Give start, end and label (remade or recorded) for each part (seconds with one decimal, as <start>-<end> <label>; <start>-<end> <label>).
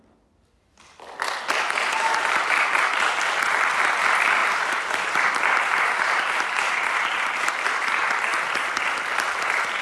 0.0-1.9 recorded; 1.9-2.7 remade; 2.7-4.4 recorded; 4.4-7.5 remade; 7.5-8.3 recorded; 8.3-8.8 remade; 8.8-9.8 recorded